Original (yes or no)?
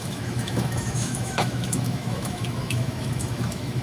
no